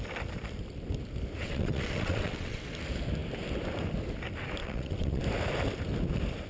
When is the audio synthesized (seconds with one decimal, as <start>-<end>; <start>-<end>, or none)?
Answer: 1.4-2.6; 4.6-5.2